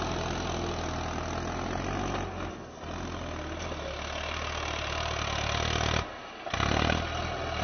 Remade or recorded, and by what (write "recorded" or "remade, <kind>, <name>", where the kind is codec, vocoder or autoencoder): recorded